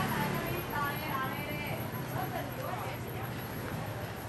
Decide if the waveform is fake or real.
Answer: real